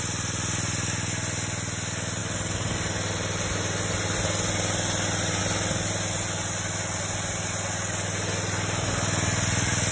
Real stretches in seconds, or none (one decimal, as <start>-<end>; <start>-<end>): 0.0-9.9